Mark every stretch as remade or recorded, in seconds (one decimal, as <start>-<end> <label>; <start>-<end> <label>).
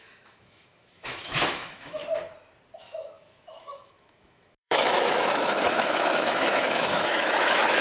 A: 0.0-2.0 remade; 2.0-2.8 recorded; 2.8-7.8 remade